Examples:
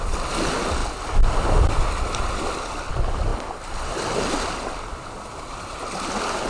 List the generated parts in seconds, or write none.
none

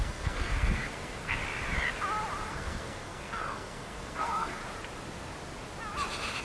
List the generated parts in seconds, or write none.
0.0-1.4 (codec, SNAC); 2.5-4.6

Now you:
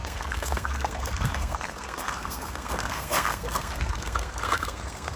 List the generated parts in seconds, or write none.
0.0-5.2 (codec, SNAC)

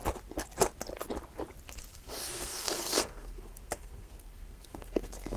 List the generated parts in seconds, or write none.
1.9-5.4 (codec, SNAC)